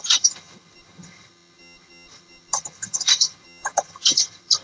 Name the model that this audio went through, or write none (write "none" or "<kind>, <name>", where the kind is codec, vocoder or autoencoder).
vocoder, HiFi-GAN